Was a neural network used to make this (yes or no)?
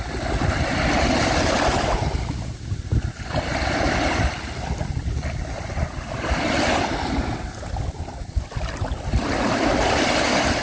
no